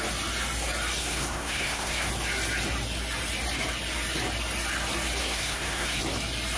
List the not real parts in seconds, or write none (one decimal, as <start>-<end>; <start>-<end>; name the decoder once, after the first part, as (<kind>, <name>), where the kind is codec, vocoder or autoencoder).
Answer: 1.0-2.1 (codec, SNAC); 5.2-6.0